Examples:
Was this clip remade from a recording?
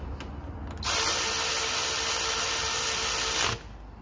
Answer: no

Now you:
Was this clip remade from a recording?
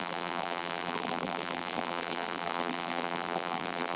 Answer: yes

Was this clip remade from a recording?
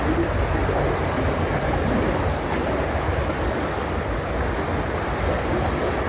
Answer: no